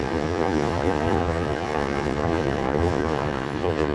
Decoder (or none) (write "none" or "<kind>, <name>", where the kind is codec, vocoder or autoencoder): vocoder, Vocos